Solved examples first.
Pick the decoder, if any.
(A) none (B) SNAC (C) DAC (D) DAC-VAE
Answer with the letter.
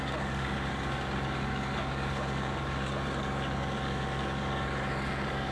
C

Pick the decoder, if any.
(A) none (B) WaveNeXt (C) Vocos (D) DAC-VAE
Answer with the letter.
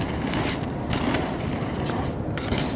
A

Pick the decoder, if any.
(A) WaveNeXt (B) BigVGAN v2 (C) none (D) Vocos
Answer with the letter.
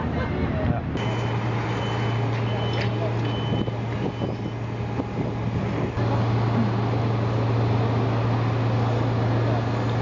C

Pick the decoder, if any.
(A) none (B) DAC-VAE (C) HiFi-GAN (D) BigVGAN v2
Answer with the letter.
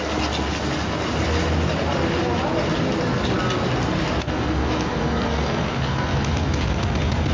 A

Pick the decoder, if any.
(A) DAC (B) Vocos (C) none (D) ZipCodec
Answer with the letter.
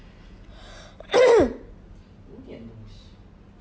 C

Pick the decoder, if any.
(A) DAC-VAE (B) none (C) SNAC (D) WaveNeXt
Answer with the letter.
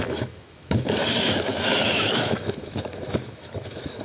A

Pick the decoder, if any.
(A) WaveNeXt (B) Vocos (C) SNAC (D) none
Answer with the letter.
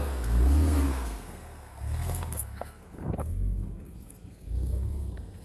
C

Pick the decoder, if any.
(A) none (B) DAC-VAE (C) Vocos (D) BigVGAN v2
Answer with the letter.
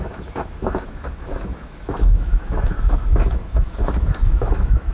B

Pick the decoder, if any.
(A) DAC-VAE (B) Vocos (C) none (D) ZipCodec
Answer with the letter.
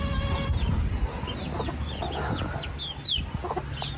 C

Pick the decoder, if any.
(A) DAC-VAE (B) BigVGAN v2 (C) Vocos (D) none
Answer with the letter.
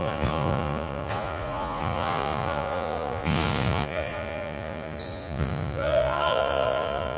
C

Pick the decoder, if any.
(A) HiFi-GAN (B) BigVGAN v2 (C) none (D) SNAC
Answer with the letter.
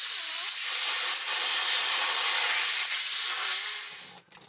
C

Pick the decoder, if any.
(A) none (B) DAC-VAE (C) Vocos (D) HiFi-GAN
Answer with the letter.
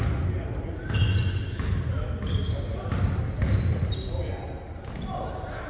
A